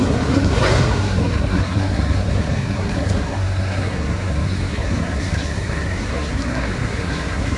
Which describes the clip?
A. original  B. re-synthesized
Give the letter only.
B